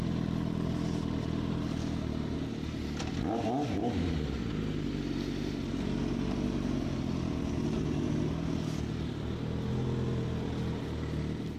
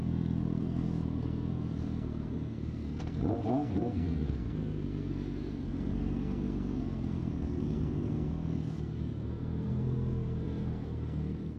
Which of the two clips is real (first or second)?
first